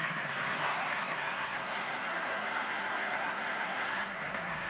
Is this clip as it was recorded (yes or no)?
no